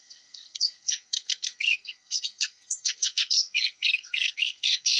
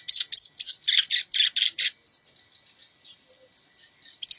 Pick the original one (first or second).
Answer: second